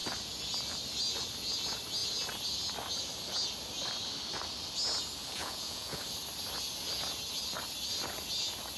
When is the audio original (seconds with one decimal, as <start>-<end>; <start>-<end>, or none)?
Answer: 0.0-5.2; 6.0-8.8